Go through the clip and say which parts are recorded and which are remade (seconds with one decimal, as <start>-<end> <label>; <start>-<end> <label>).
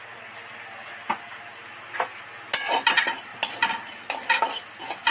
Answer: 0.0-5.1 recorded